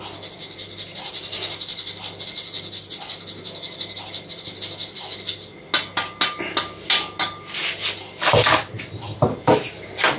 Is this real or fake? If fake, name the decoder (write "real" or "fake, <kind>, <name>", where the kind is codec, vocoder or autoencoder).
real